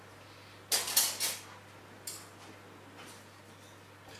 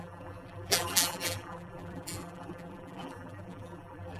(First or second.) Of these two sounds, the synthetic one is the second